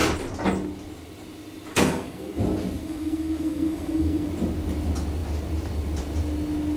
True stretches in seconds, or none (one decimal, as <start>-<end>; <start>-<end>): 0.0-1.7; 2.4-2.8; 4.3-6.8